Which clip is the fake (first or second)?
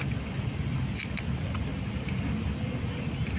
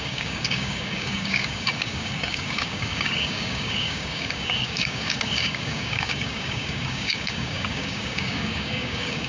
second